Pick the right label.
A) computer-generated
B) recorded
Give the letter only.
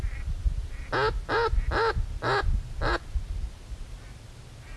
B